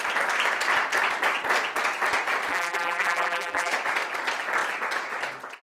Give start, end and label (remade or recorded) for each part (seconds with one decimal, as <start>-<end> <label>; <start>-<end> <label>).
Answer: 0.0-2.5 recorded; 2.5-3.7 remade; 3.7-5.6 recorded